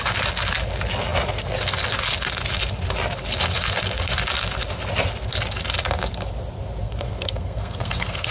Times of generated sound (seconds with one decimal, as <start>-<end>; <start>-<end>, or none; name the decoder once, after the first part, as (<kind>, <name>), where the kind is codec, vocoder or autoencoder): 6.8-8.3 (codec, SNAC)